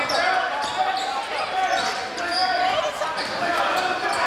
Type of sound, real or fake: real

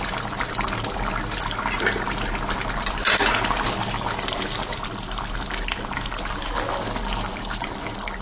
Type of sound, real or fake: real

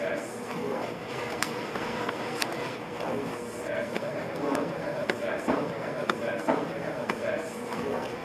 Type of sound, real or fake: fake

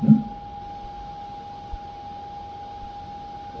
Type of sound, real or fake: real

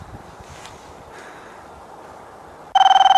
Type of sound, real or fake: real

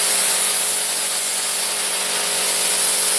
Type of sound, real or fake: fake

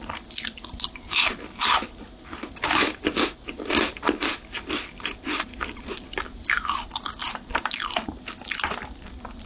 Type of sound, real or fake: real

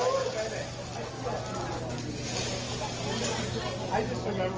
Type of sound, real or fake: real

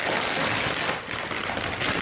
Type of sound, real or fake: real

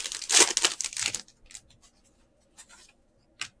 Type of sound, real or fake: real